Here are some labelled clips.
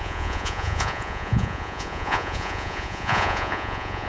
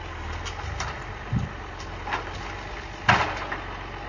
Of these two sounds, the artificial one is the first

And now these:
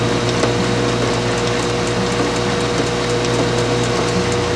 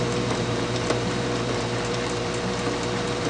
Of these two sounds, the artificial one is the second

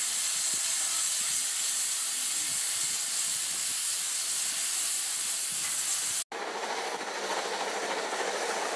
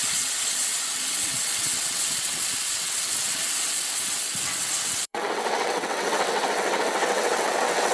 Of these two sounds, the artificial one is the second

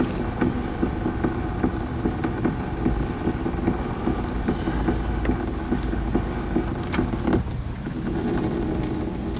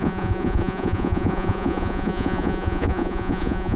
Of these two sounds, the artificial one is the second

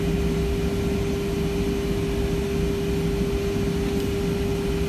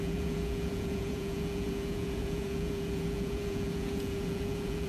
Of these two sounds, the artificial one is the second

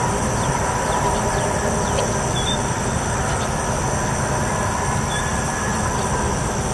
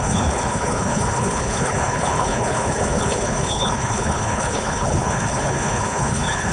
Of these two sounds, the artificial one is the second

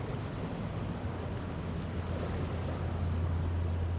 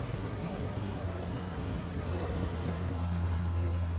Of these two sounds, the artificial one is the second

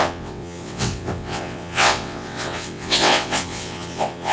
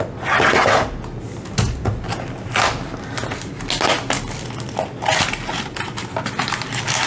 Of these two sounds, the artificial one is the first